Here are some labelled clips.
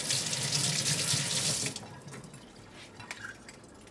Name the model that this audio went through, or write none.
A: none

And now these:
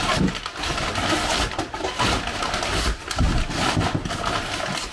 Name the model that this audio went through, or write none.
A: none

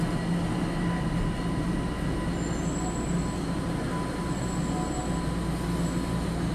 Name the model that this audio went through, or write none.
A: none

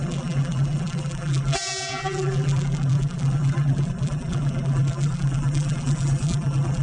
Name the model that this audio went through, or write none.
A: vocoder, BigVGAN v2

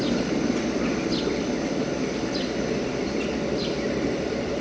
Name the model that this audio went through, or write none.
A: none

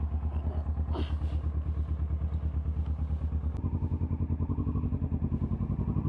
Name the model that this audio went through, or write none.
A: none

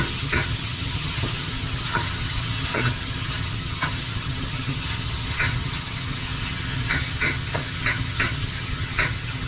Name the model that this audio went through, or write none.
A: vocoder, HiFi-GAN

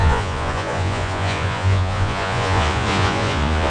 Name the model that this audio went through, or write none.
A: vocoder, Vocos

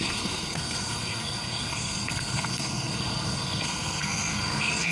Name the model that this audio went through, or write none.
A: codec, SNAC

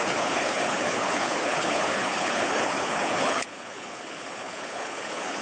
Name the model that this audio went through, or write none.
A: codec, HILCodec